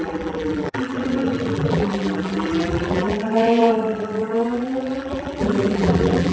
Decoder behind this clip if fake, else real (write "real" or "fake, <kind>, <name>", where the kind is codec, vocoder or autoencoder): fake, vocoder, BigVGAN v2